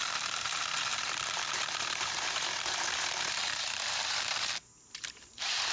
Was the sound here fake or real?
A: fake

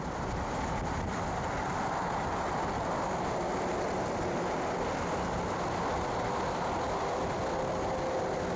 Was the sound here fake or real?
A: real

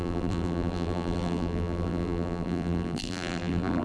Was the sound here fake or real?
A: fake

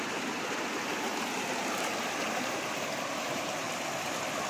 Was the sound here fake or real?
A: real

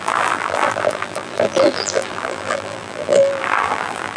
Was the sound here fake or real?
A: fake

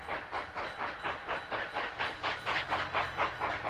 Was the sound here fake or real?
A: real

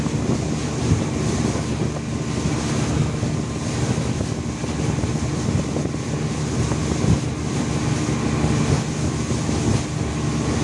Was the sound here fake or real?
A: real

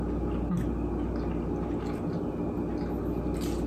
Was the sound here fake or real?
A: real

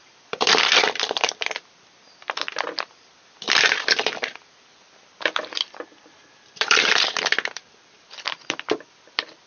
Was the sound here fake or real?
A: fake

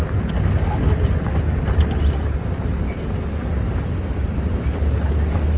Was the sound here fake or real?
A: real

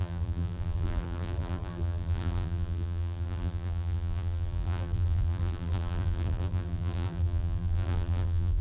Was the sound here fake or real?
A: fake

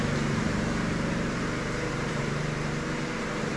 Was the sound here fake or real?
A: fake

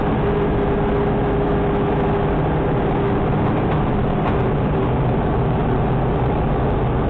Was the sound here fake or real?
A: real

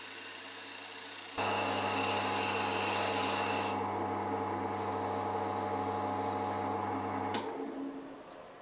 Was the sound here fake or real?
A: real